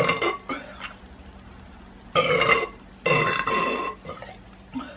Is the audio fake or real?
real